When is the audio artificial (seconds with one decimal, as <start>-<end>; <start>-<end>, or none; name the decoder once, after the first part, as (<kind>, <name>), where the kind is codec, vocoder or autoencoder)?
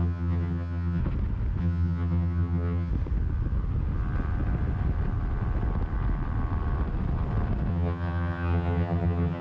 0.0-1.0 (vocoder, HiFi-GAN); 1.6-2.9; 7.7-9.4